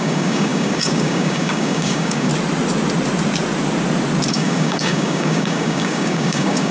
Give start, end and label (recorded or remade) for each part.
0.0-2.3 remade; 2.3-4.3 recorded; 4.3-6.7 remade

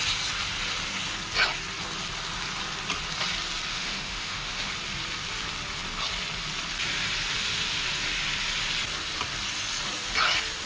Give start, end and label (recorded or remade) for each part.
0.0-3.7 recorded; 3.7-4.7 remade; 4.7-10.7 recorded

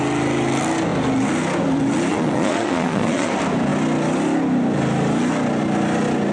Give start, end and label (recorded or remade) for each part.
0.0-2.1 recorded; 2.1-3.3 remade; 3.3-6.3 recorded

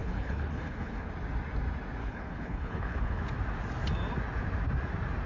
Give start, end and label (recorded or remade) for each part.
0.0-1.1 remade; 1.1-2.0 recorded; 2.0-3.2 remade; 3.2-5.3 recorded

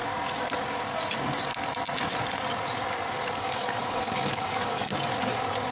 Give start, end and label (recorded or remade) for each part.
0.0-3.4 recorded; 3.4-4.9 remade; 4.9-5.7 recorded

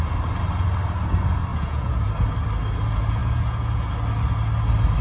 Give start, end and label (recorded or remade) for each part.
0.0-1.5 recorded; 1.5-2.1 remade; 2.1-3.2 recorded; 3.2-3.9 remade; 3.9-5.0 recorded

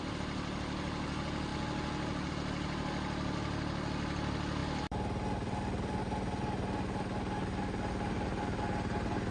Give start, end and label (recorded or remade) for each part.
0.0-4.6 recorded; 4.6-6.0 remade; 6.0-9.3 recorded

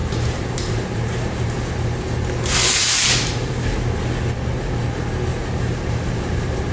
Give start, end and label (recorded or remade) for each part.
0.0-3.6 remade; 3.6-5.3 recorded; 5.3-6.7 remade